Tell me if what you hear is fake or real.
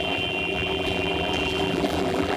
fake